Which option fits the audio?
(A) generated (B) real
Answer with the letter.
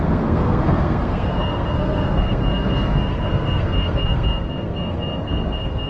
A